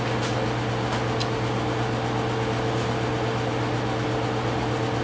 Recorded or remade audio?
recorded